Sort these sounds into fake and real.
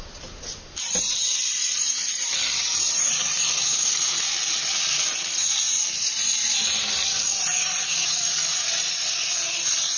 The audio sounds real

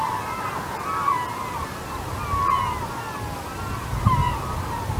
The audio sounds real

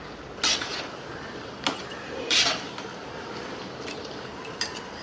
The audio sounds real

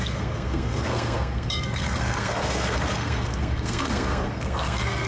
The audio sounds fake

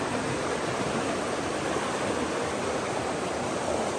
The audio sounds real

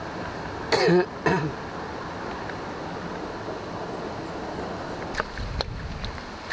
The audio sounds real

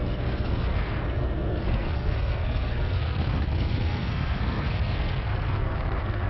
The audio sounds fake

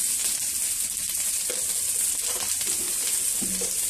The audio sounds real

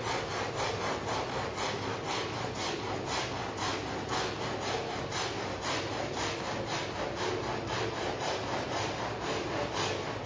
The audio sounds real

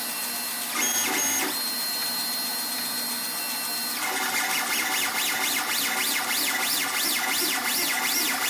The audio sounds real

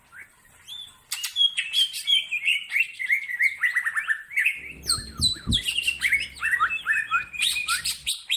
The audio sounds real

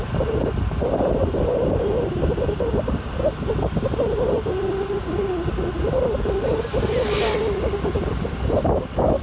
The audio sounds real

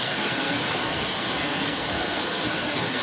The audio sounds fake